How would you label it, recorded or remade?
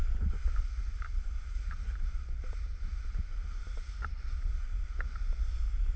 recorded